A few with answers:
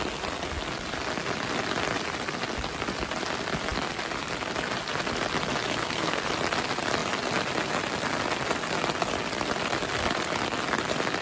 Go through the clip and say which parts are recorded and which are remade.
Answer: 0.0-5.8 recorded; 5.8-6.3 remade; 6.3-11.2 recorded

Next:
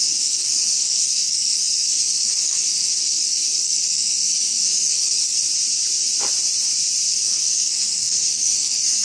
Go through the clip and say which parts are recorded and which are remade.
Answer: 0.0-5.5 remade; 5.5-7.1 recorded; 7.1-9.0 remade